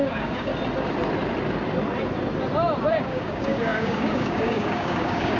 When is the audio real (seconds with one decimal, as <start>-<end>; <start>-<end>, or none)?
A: 0.5-2.9